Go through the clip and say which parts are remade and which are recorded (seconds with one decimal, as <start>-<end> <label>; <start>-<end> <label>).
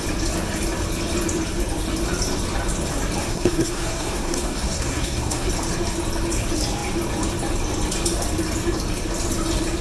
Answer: 0.0-3.2 recorded; 3.2-5.5 remade; 5.5-9.8 recorded